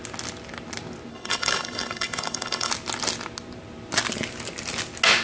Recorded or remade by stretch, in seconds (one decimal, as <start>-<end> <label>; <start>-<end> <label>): 0.0-1.1 recorded; 1.1-2.7 remade; 2.7-5.2 recorded